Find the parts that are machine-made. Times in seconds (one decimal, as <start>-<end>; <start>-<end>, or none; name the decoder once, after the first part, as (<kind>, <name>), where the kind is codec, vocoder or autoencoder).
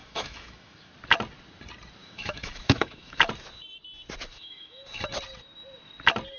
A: 0.0-0.9 (autoencoder, DAC-VAE); 2.0-3.3; 4.3-5.0